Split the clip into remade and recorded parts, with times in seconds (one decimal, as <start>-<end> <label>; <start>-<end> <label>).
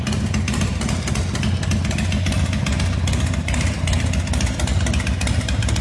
0.0-5.8 recorded